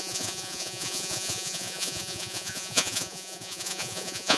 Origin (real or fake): fake